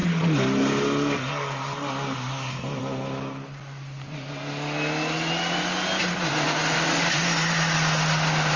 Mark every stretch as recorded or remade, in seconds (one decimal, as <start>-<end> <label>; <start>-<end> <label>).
0.0-8.6 recorded

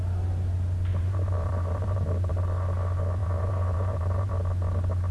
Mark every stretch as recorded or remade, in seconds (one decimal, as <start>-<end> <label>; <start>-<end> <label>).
0.0-0.9 recorded; 0.9-2.4 remade; 2.4-3.2 recorded; 3.2-4.3 remade; 4.3-5.1 recorded